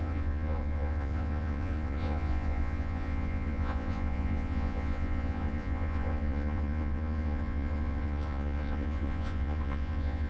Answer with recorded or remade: remade